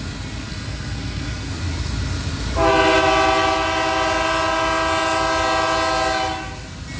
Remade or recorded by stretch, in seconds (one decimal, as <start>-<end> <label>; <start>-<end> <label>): 0.0-0.5 recorded; 0.5-1.5 remade; 1.5-7.0 recorded

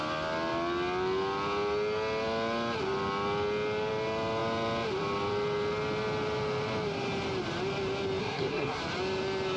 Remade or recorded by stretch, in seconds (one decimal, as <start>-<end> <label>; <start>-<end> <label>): 0.0-8.2 recorded; 8.2-8.8 remade; 8.8-9.6 recorded